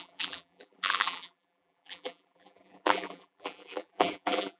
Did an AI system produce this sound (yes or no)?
yes